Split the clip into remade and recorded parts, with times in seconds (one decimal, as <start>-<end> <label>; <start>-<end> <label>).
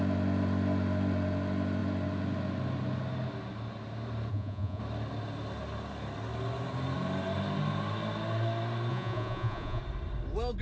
0.0-4.3 recorded; 4.3-4.8 remade; 4.8-8.9 recorded; 8.9-9.8 remade; 9.8-10.6 recorded